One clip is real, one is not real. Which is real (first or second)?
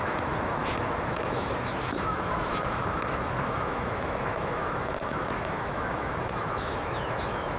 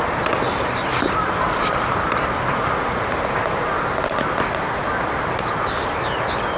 second